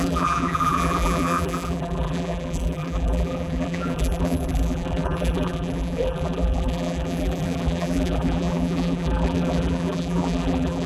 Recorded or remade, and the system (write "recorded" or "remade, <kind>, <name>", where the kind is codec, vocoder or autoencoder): remade, vocoder, BigVGAN v2